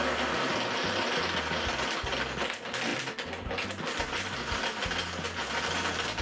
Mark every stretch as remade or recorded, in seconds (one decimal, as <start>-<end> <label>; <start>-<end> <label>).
0.0-6.2 recorded